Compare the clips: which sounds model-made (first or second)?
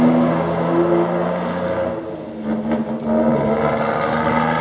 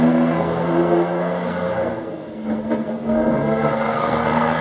second